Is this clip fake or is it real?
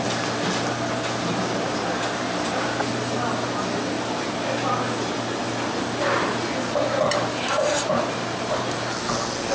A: real